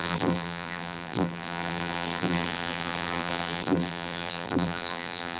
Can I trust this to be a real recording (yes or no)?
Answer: no